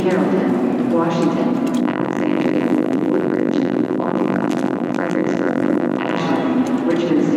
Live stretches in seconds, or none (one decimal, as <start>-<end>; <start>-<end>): 0.0-1.8; 6.2-7.4